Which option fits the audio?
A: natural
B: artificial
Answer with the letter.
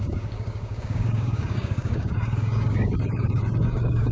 B